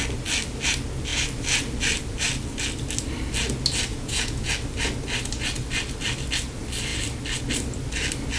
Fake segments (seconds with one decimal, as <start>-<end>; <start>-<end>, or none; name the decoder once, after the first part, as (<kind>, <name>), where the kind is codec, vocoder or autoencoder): 3.9-4.5 (vocoder, Vocos)